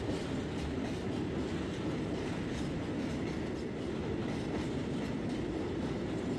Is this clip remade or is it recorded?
recorded